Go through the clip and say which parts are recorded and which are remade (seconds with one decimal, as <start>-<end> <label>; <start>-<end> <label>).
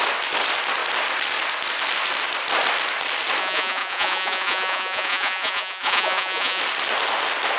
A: 0.0-3.4 recorded; 3.4-6.6 remade; 6.6-7.6 recorded